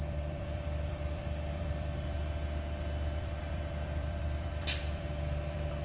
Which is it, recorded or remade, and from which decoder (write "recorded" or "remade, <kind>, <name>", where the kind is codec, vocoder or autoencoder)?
remade, vocoder, BigVGAN v2